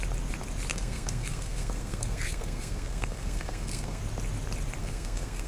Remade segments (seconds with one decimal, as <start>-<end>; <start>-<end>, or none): 0.7-4.0; 4.8-5.5